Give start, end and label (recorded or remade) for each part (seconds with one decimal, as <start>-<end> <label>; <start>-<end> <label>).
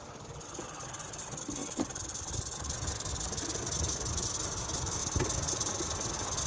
0.0-6.5 recorded